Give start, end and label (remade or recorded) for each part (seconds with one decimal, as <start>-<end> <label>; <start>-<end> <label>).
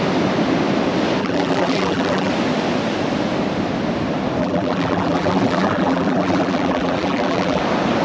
0.0-1.2 recorded; 1.2-2.3 remade; 2.3-4.4 recorded; 4.4-7.6 remade; 7.6-8.0 recorded